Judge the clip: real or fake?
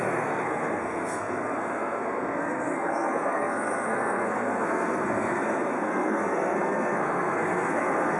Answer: fake